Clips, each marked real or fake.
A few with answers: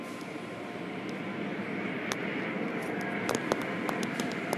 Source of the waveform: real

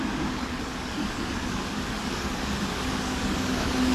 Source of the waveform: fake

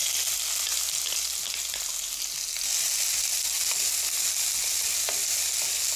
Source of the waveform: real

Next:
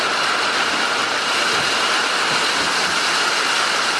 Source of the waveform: real